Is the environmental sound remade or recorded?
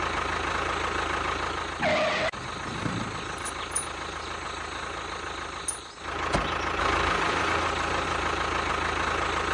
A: recorded